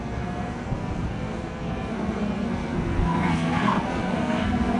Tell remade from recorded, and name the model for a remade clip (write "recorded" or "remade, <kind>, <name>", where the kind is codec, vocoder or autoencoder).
remade, codec, SNAC